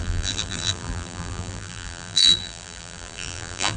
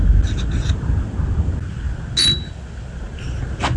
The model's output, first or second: first